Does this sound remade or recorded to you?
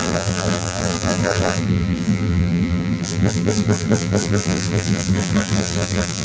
remade